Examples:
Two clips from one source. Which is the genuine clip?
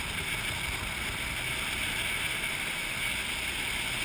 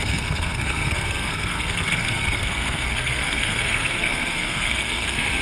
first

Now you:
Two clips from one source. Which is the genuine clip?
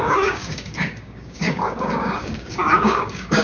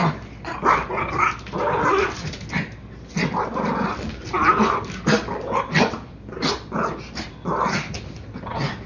second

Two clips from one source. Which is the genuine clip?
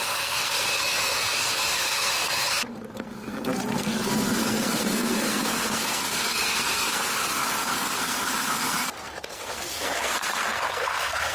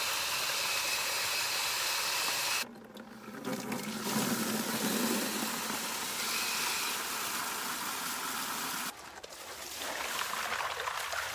second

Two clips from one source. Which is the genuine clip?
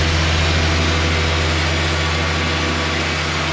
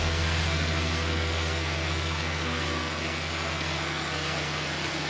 first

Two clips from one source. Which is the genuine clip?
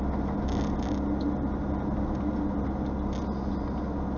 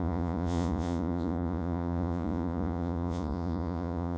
first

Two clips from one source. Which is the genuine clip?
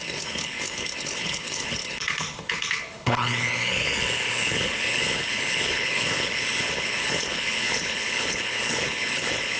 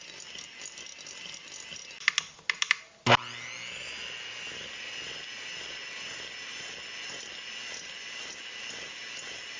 second